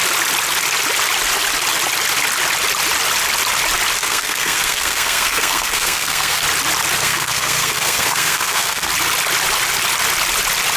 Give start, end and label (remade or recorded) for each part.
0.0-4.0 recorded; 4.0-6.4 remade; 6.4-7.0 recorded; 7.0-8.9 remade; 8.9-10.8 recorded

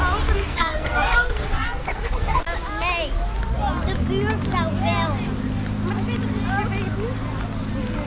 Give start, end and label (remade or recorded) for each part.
0.0-0.4 recorded; 0.4-2.4 remade; 2.4-8.1 recorded

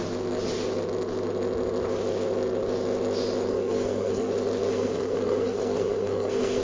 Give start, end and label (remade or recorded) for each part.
0.0-3.5 recorded; 3.5-4.3 remade; 4.3-4.7 recorded; 4.7-6.6 remade

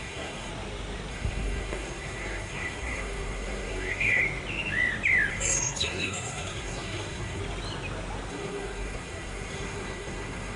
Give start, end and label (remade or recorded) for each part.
0.0-0.5 remade; 0.5-1.1 recorded; 1.1-4.2 remade; 4.2-5.3 recorded; 5.3-7.4 remade; 7.4-8.3 recorded; 8.3-10.6 remade

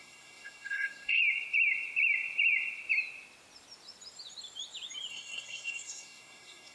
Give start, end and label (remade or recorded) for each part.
0.0-1.2 remade; 1.2-5.1 recorded; 5.1-6.7 remade

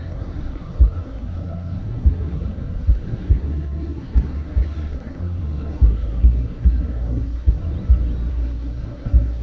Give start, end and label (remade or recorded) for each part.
0.0-7.6 remade; 7.6-8.3 recorded; 8.3-9.4 remade

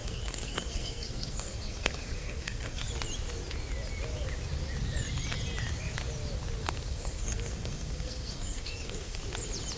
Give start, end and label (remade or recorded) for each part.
0.0-2.9 remade; 2.9-6.6 recorded; 6.6-9.2 remade; 9.2-9.8 recorded